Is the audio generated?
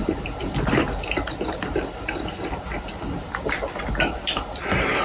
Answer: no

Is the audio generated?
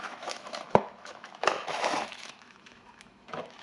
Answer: yes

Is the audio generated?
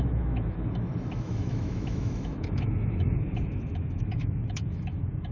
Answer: yes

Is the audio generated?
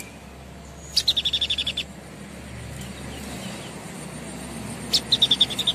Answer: no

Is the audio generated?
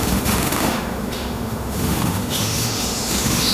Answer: yes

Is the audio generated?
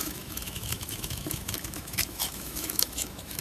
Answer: yes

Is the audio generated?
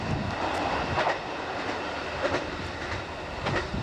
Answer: no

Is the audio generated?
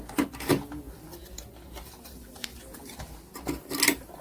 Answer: no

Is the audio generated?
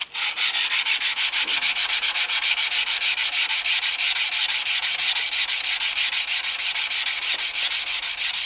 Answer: no